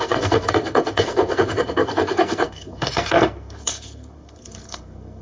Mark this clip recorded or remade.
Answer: remade